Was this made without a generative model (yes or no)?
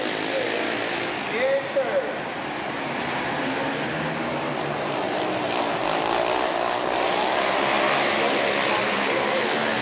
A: yes